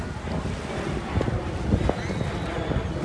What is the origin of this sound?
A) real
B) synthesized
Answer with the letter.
A